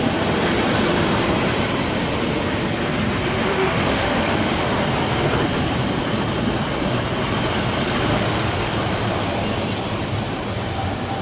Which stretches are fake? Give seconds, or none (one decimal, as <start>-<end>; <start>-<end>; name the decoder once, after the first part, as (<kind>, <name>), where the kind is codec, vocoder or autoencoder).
3.5-4.8 (autoencoder, DAC-VAE); 8.1-8.7